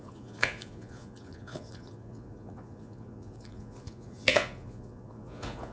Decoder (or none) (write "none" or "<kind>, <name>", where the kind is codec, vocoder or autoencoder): vocoder, Vocos